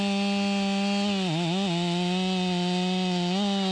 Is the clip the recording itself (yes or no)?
yes